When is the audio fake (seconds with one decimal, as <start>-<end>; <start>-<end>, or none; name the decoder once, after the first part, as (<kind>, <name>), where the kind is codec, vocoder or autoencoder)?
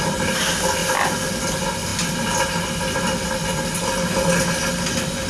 none